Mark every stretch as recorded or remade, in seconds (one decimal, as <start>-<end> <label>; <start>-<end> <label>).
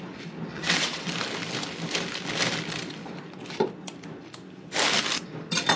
0.0-0.5 recorded; 0.5-1.1 remade; 1.1-5.8 recorded